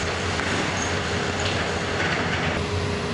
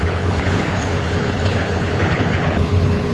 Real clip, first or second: first